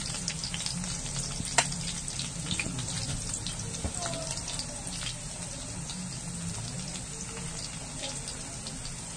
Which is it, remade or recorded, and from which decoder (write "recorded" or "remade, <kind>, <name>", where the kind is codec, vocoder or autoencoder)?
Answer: recorded